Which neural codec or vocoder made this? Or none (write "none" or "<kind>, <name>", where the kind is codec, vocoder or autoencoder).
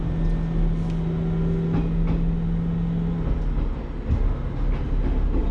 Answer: none